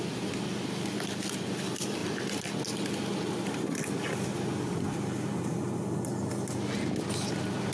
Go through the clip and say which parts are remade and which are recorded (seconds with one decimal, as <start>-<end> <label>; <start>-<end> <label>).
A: 0.0-7.7 recorded